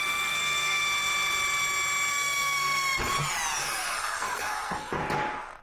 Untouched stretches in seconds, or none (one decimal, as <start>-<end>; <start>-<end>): 0.8-2.1; 3.0-3.6; 5.0-5.6